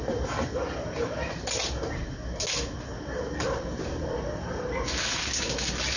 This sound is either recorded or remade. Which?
recorded